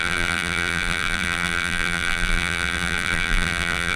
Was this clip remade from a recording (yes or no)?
yes